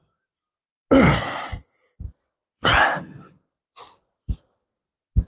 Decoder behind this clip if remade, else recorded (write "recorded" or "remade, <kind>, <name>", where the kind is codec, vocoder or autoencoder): recorded